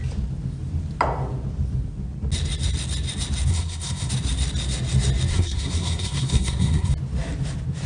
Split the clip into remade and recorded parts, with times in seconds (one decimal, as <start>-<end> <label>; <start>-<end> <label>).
0.0-3.5 recorded; 3.5-4.1 remade; 4.1-5.3 recorded; 5.3-6.9 remade; 6.9-7.9 recorded